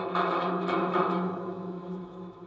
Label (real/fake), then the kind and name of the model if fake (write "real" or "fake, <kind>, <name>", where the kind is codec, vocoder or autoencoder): fake, autoencoder, DAC-VAE